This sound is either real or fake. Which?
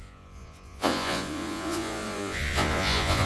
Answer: fake